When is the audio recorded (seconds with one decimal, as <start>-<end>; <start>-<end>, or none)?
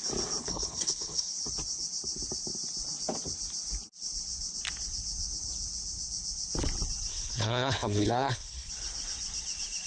0.0-0.4; 1.3-7.1; 8.7-9.9